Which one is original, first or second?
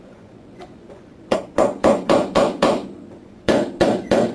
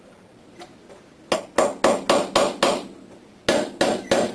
second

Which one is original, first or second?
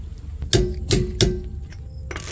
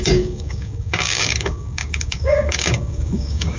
first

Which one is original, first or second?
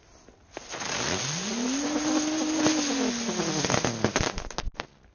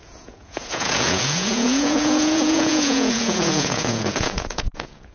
first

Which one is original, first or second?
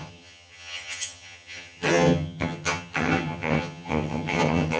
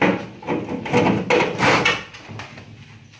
second